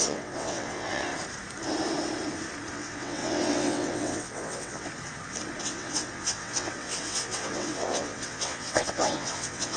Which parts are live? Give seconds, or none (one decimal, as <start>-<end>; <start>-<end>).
1.1-2.7; 4.9-5.6